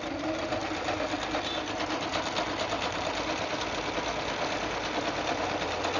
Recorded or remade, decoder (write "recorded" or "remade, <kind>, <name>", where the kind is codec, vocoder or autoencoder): recorded